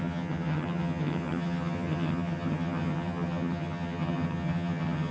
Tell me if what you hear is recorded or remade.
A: remade